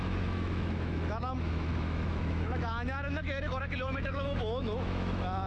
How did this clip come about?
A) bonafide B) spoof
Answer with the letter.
B